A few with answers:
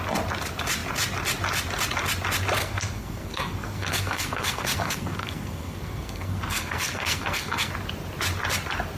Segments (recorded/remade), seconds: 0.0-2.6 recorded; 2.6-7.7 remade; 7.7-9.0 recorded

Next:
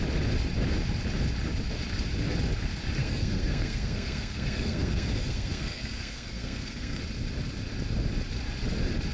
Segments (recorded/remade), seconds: 0.0-3.0 recorded; 3.0-7.0 remade; 7.0-9.1 recorded

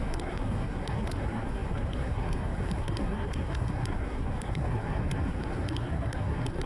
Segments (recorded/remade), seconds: 0.0-6.7 remade

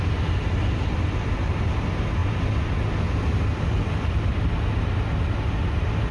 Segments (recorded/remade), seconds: 0.0-6.1 recorded

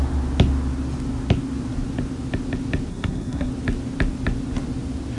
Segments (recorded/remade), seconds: 0.0-2.9 recorded; 2.9-3.5 remade; 3.5-5.2 recorded

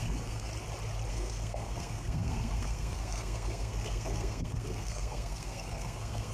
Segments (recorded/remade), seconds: 0.0-0.5 remade; 0.5-1.1 recorded; 1.1-6.3 remade

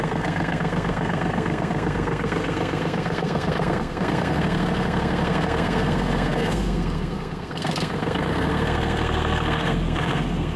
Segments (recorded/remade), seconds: 0.0-10.6 remade